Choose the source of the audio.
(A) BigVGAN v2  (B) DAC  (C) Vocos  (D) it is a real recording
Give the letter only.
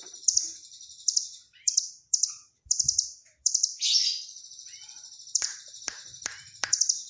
A